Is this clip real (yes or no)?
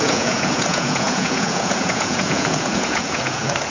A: no